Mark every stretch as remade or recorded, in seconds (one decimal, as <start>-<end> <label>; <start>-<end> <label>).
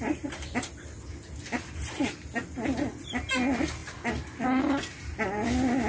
0.0-5.9 recorded